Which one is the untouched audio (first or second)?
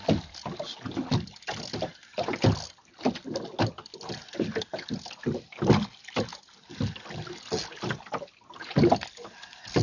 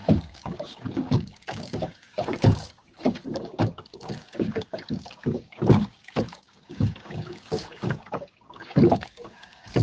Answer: first